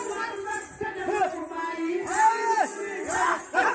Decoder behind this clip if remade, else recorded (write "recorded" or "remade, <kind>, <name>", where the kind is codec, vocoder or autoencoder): recorded